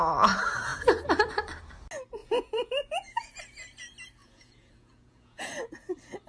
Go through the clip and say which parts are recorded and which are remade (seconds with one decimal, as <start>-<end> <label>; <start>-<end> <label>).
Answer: 0.0-2.2 recorded; 2.2-3.3 remade; 3.3-4.2 recorded; 4.2-5.5 remade; 5.5-6.3 recorded